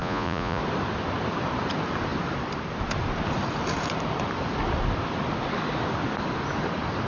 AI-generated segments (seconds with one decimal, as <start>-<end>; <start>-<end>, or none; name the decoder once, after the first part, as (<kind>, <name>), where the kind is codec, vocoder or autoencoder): 0.0-0.6 (vocoder, Vocos)